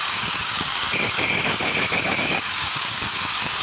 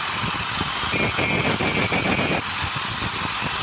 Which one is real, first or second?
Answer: second